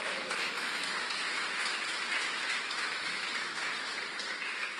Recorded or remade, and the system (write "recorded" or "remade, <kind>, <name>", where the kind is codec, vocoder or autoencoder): remade, autoencoder, DAC-VAE